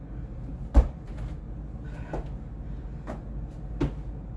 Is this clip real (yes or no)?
yes